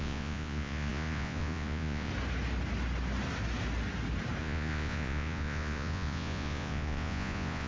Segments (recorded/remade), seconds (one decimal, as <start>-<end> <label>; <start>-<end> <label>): 0.0-2.1 remade; 2.1-4.4 recorded; 4.4-7.7 remade